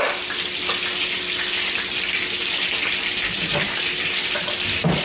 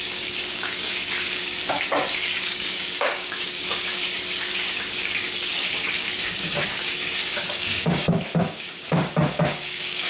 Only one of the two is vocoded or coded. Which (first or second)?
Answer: second